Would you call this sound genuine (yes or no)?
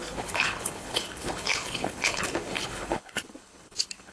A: no